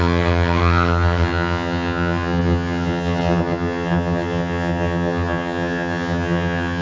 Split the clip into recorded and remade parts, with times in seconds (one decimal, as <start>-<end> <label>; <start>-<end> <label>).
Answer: 0.0-6.8 remade